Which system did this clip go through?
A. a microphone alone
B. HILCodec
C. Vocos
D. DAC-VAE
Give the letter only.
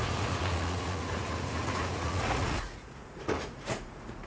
C